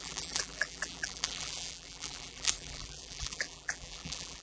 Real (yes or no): no